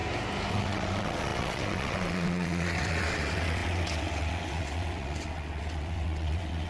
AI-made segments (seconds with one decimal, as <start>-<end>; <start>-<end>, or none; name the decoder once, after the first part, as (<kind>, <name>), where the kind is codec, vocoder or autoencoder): 0.5-6.7 (vocoder, WaveNeXt)